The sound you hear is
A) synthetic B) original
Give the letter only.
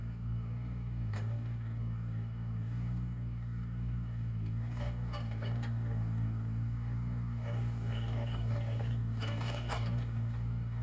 A